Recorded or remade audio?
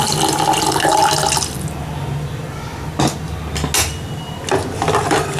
recorded